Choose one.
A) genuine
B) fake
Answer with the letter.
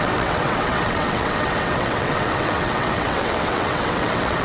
B